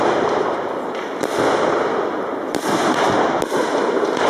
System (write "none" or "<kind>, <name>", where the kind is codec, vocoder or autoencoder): none